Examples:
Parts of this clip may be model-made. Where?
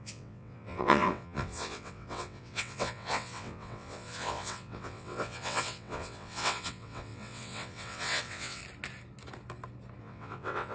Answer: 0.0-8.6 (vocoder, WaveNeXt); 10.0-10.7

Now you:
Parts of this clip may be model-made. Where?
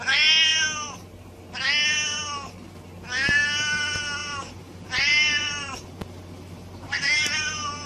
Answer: 4.2-7.9 (vocoder, BigVGAN v2)